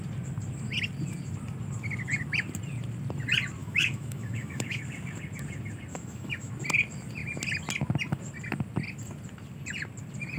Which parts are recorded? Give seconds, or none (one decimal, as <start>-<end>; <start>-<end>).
0.0-3.6; 4.8-5.9; 6.5-10.4